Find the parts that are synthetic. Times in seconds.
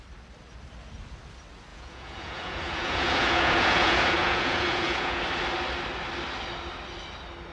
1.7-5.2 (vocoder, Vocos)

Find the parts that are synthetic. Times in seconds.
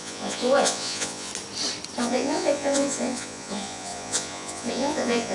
0.0-1.3 (vocoder, Vocos); 2.0-5.3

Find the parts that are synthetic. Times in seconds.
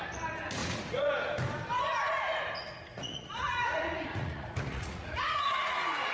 0.6-1.1 (vocoder, Vocos); 2.9-6.1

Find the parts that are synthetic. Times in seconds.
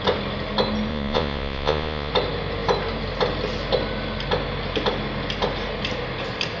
0.9-2.1 (vocoder, Vocos)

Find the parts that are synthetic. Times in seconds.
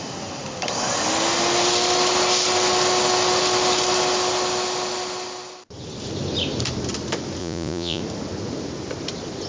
7.4-8.0 (vocoder, Vocos)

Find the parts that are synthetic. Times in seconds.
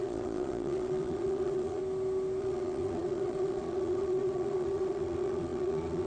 0.0-1.8 (vocoder, Vocos); 2.4-6.1